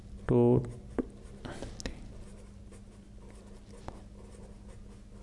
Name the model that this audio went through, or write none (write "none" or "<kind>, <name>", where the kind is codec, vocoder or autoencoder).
none